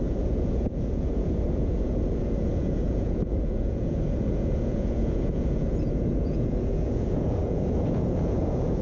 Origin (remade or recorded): remade